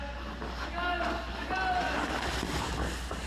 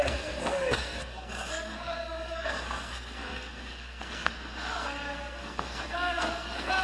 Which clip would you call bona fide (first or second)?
first